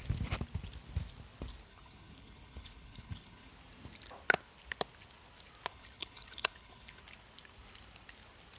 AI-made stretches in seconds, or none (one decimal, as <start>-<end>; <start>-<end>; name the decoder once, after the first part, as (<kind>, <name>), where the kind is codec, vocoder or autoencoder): 1.7-3.5 (codec, HILCodec); 5.7-7.0